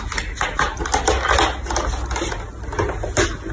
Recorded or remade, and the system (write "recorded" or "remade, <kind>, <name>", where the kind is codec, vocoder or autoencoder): recorded